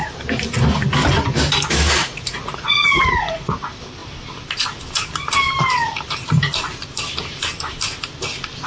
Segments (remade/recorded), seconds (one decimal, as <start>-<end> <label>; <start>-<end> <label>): 0.0-2.0 recorded; 2.0-3.5 remade; 3.5-8.7 recorded